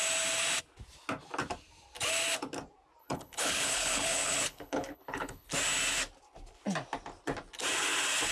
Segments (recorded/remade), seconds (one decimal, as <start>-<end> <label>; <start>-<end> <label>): 0.0-3.0 recorded; 3.0-5.5 remade; 5.5-8.3 recorded